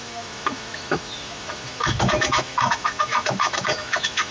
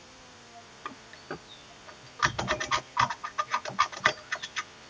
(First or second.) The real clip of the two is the second